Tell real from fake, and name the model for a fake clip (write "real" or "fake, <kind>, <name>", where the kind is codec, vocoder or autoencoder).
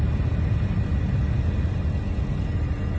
real